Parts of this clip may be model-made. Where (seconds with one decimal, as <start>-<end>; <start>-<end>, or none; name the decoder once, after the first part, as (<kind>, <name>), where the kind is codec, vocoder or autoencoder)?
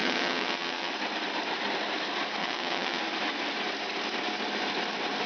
0.0-0.9 (vocoder, WaveNeXt); 2.4-3.0